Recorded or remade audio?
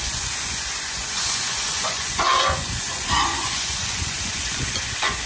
remade